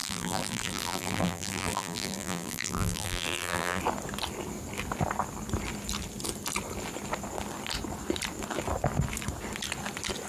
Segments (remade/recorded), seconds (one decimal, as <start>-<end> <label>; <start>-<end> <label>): 0.0-3.8 remade; 3.8-10.3 recorded